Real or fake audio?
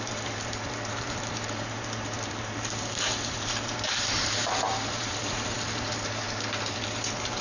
fake